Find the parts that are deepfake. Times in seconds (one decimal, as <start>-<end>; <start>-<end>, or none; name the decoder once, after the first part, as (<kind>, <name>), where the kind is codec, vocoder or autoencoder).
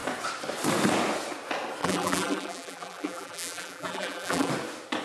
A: 1.8-4.5 (vocoder, BigVGAN v2)